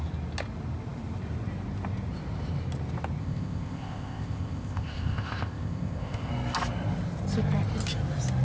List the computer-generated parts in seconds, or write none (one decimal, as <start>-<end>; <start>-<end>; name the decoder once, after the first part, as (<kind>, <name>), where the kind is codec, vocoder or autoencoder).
3.2-6.3 (codec, ZipCodec)